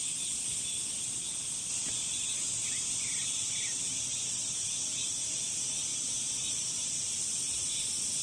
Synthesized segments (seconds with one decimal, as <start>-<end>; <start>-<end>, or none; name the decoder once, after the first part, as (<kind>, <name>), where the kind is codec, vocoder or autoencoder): none